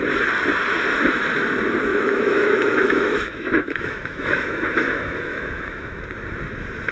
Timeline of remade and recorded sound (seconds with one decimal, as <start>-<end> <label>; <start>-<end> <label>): 0.0-1.9 recorded; 1.9-6.0 remade; 6.0-6.9 recorded